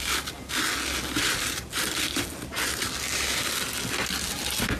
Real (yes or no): yes